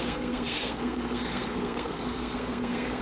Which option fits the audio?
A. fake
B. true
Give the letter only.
A